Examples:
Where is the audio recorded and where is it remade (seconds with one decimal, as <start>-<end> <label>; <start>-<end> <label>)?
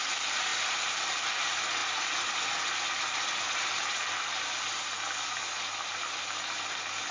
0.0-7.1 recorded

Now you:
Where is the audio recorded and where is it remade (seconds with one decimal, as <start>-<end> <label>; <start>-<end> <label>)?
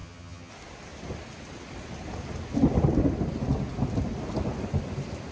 0.0-0.5 remade; 0.5-5.3 recorded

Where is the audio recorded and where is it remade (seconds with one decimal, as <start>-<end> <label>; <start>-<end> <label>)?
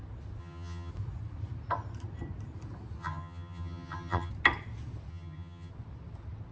0.0-0.4 recorded; 0.4-0.9 remade; 0.9-3.0 recorded; 3.0-4.3 remade; 4.3-5.1 recorded; 5.1-5.7 remade; 5.7-6.5 recorded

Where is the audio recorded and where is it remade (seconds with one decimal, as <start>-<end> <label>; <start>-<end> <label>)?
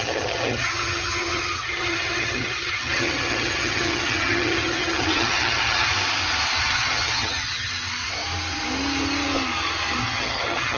0.0-5.9 remade; 5.9-6.6 recorded; 6.6-7.7 remade; 7.7-10.0 recorded; 10.0-10.8 remade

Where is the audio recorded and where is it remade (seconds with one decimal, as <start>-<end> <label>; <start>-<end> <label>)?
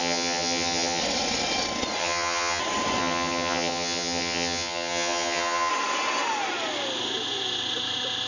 0.0-1.0 remade; 1.0-2.0 recorded; 2.0-2.6 remade; 2.6-3.0 recorded; 3.0-5.7 remade; 5.7-8.3 recorded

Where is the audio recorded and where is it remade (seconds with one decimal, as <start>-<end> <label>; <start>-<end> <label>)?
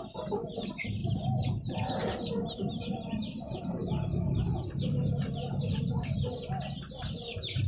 0.0-7.7 recorded